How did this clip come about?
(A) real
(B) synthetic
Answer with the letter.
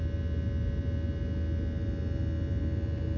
A